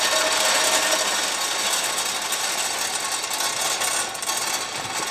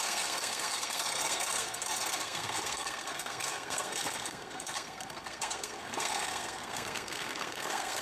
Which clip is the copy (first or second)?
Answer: second